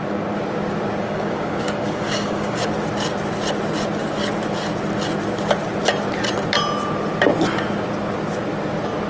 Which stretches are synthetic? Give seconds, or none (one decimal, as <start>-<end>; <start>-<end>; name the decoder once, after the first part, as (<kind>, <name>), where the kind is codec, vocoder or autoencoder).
1.0-2.7 (codec, DAC)